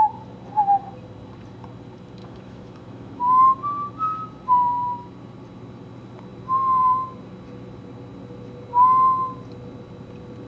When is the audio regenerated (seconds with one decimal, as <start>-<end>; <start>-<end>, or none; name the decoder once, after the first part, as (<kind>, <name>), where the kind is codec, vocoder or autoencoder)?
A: 2.2-3.2 (autoencoder, DAC-VAE)